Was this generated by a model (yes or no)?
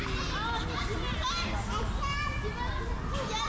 no